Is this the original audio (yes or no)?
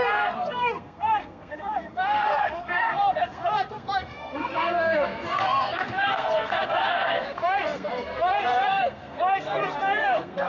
no